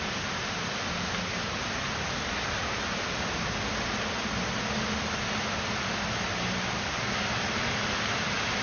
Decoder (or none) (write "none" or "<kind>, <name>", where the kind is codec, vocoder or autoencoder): none